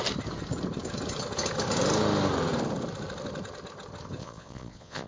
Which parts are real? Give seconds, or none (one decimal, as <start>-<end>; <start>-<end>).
0.0-4.2